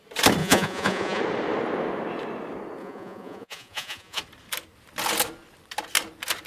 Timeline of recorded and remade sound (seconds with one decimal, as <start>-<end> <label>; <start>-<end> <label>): 0.0-0.4 recorded; 0.4-1.2 remade; 1.2-2.8 recorded; 2.8-4.2 remade; 4.2-6.5 recorded